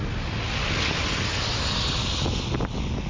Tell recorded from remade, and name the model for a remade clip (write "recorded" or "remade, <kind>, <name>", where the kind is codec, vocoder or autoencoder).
recorded